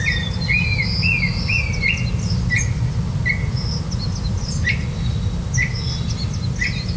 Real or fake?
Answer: real